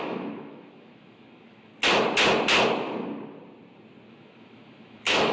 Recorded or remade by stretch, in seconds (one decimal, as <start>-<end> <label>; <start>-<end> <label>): 0.0-1.7 remade; 1.7-4.1 recorded; 4.1-5.3 remade